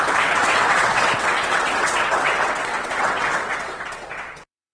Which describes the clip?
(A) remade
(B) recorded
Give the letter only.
A